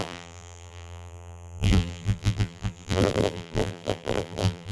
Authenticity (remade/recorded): remade